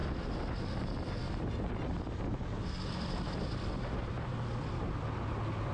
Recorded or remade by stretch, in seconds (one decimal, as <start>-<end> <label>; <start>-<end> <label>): 0.0-5.7 recorded